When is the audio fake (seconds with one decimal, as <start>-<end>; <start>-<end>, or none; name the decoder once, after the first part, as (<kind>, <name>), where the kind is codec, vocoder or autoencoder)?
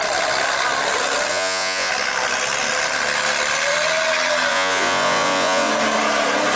1.3-1.9 (vocoder, Vocos); 4.5-5.7